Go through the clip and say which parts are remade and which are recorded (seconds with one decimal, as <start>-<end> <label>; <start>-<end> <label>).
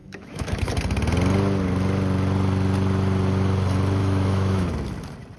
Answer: 0.0-0.7 remade; 0.7-4.0 recorded; 4.0-4.7 remade; 4.7-5.4 recorded